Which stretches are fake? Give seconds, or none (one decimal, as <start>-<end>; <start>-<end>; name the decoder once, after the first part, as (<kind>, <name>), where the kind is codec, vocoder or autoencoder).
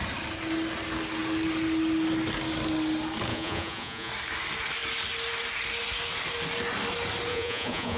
3.3-4.1 (vocoder, Vocos); 7.3-8.0